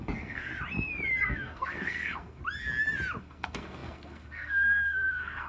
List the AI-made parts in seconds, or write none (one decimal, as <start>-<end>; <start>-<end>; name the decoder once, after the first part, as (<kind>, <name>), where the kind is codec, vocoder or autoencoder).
0.0-0.5 (codec, SNAC); 1.2-2.4; 3.2-5.5